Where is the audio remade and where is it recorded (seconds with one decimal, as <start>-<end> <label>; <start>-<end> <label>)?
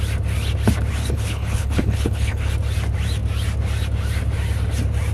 0.0-1.0 recorded; 1.0-2.5 remade; 2.5-5.1 recorded